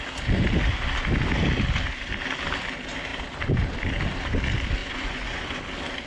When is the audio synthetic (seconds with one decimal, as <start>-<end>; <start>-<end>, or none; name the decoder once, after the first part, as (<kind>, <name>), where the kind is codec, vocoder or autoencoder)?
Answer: 4.8-5.6 (vocoder, Vocos)